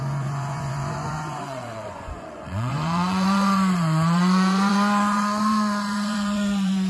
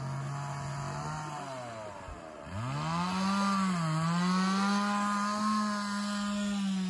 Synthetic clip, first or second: first